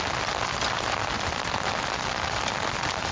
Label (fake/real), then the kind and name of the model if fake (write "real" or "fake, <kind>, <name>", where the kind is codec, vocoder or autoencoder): real